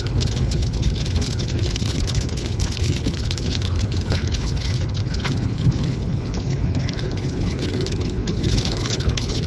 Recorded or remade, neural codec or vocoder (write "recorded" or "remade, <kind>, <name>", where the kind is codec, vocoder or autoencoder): remade, codec, HILCodec